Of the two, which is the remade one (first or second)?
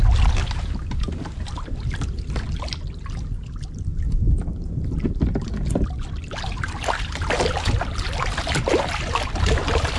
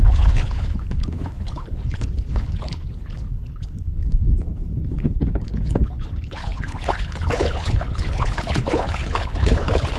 second